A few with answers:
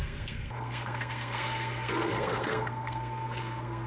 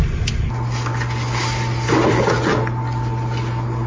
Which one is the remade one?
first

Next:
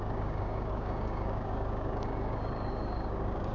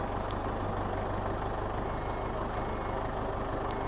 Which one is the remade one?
first